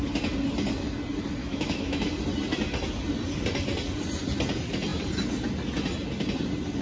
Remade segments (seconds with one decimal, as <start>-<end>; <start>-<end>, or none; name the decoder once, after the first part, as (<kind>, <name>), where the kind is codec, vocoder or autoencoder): 1.4-2.1 (autoencoder, DAC-VAE)